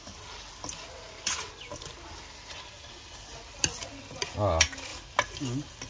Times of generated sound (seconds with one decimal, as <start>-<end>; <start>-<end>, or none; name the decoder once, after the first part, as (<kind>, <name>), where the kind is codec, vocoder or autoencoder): none